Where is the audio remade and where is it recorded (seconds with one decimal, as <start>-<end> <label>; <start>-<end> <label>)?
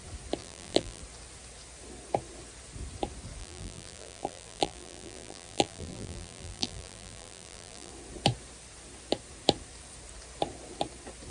0.0-0.4 recorded; 0.4-1.0 remade; 1.0-3.4 recorded; 3.4-7.9 remade; 7.9-11.3 recorded